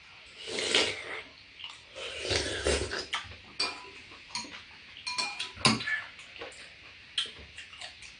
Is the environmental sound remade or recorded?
recorded